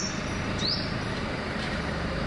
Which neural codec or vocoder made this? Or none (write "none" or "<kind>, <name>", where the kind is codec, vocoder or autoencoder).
none